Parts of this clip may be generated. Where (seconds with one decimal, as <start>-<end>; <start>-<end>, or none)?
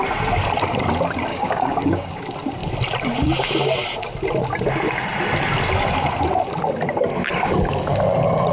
1.3-2.2